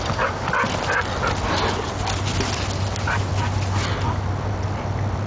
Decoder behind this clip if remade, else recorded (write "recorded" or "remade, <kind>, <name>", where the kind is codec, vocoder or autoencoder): recorded